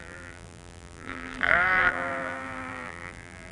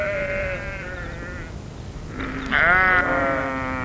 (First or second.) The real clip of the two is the second